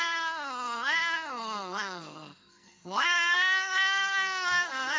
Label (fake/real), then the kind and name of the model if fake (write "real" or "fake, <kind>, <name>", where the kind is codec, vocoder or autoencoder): fake, codec, SNAC